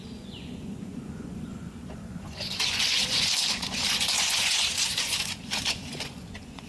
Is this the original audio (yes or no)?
no